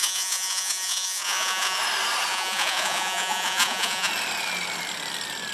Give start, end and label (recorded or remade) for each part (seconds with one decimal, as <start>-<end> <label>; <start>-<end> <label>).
0.0-1.8 remade; 1.8-2.3 recorded; 2.3-4.1 remade; 4.1-5.5 recorded